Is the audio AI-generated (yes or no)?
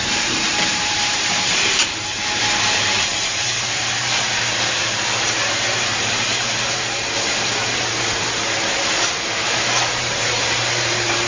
yes